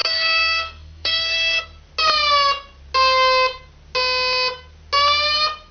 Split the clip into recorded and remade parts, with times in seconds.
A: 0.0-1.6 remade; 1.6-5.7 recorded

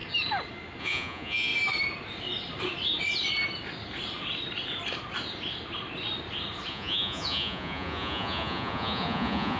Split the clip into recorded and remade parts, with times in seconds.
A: 0.0-0.8 recorded; 0.8-1.5 remade; 1.5-6.7 recorded; 6.7-9.6 remade

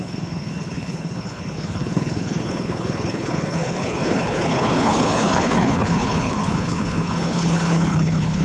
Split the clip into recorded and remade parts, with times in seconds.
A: 0.0-8.4 remade

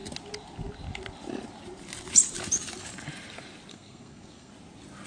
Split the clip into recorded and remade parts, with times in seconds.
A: 0.0-3.7 recorded; 3.7-4.5 remade; 4.5-5.1 recorded

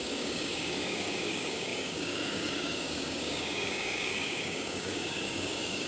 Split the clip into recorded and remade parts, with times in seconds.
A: 0.0-5.9 remade

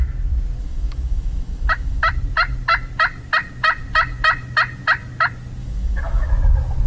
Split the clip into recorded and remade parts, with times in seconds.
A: 0.0-0.6 recorded; 0.6-2.1 remade; 2.1-5.6 recorded; 5.6-6.3 remade; 6.3-6.9 recorded

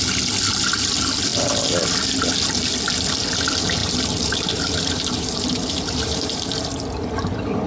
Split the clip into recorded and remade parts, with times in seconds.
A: 0.0-3.8 recorded; 3.8-6.5 remade; 6.5-7.7 recorded